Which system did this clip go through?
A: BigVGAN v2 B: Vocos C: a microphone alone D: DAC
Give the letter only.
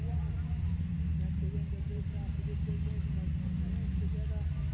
C